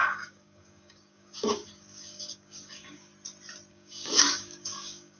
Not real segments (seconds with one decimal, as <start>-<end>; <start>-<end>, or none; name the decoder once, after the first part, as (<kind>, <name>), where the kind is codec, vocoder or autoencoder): 0.0-3.1 (codec, DAC); 3.7-5.2